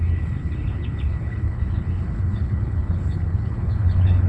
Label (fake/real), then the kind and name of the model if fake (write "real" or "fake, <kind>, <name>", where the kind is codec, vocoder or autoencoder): fake, codec, HILCodec